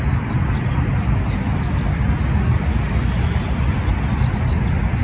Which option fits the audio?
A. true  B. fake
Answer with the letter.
A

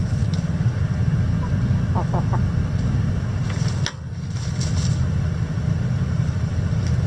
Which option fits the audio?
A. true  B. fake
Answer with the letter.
A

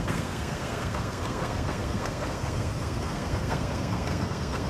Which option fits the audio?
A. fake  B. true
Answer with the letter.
A